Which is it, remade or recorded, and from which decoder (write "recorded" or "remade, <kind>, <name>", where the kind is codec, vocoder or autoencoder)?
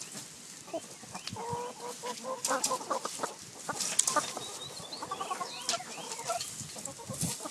recorded